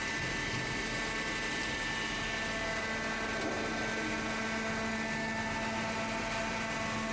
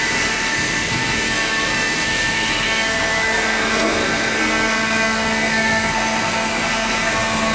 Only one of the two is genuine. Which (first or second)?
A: first